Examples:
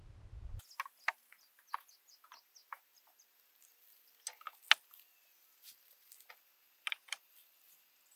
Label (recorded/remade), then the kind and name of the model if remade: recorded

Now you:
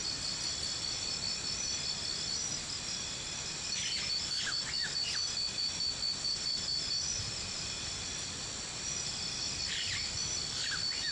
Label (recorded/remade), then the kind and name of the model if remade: recorded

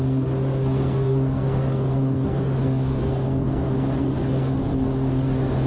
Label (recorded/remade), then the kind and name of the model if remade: remade, codec, SNAC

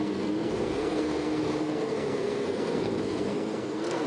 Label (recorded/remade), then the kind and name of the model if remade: remade, codec, SNAC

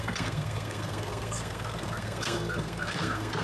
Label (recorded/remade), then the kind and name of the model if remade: remade, codec, SNAC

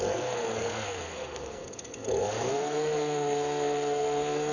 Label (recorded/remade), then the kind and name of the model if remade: remade, codec, SNAC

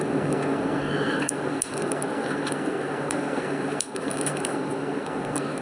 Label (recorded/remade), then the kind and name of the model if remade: remade, codec, SNAC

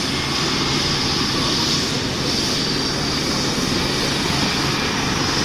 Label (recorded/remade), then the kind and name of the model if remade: recorded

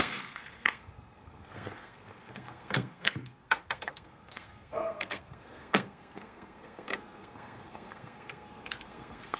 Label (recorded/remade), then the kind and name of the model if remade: remade, codec, SNAC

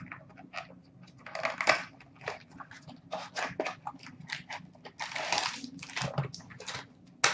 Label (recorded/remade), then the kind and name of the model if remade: recorded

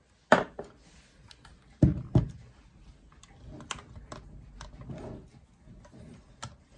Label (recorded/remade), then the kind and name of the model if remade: recorded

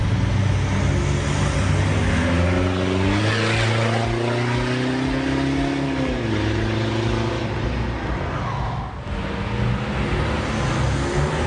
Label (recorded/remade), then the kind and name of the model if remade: recorded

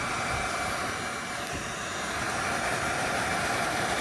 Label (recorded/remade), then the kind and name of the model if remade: recorded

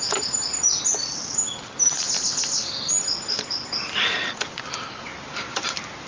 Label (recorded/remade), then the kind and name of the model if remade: recorded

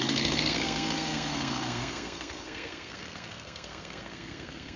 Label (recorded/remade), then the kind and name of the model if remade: remade, codec, SNAC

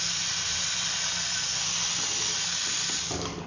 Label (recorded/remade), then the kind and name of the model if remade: recorded